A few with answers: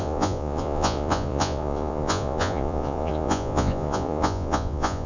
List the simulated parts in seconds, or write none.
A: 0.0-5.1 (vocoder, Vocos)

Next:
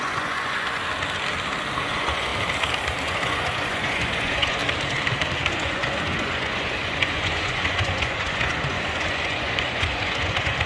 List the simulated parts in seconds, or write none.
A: 0.0-0.8 (vocoder, Vocos); 1.8-2.3; 3.0-4.6; 5.5-10.7

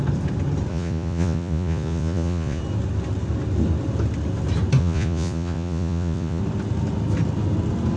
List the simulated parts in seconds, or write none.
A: 0.7-2.6 (vocoder, Vocos); 4.8-6.4

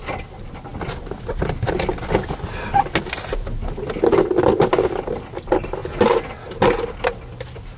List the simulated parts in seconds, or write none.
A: none